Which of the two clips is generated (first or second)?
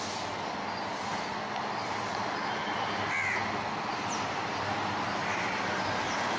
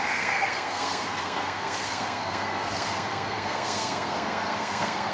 second